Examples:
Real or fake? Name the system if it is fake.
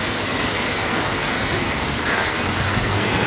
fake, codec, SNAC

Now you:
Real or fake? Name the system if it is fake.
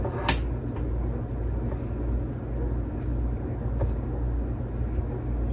real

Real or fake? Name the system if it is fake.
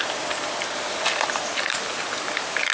real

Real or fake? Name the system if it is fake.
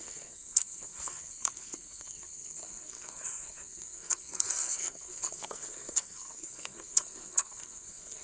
fake, codec, SNAC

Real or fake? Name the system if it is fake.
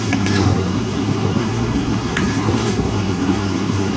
fake, codec, SNAC